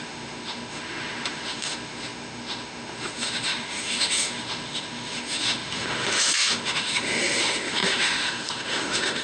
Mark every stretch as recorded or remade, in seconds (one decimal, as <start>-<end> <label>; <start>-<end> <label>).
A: 0.0-9.2 remade